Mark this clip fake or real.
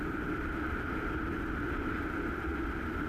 real